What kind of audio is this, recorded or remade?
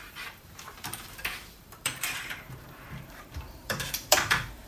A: remade